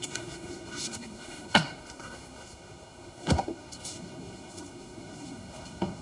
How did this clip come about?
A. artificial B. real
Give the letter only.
A